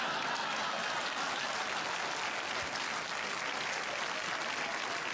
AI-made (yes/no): no